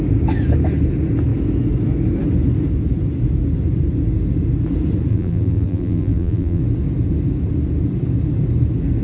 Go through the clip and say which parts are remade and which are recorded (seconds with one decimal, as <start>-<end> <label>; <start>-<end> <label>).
0.0-5.1 recorded; 5.1-6.6 remade; 6.6-9.0 recorded